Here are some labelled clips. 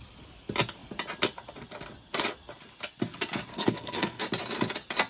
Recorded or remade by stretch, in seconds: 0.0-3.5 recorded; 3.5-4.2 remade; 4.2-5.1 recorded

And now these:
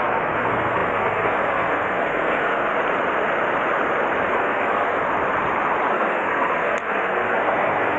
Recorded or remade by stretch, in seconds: 0.0-2.7 remade; 2.7-4.3 recorded; 4.3-5.0 remade; 5.0-5.9 recorded; 5.9-8.0 remade

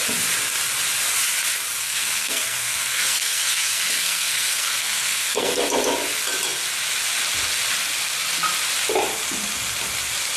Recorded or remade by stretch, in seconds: 0.0-1.8 recorded; 1.8-5.6 remade; 5.6-10.4 recorded

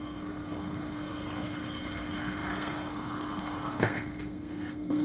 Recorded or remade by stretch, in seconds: 0.0-5.0 remade

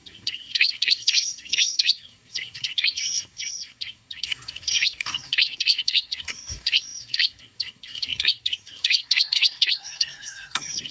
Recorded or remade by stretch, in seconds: 0.0-10.9 remade